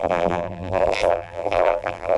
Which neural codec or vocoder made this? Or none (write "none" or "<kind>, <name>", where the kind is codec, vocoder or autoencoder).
vocoder, BigVGAN v2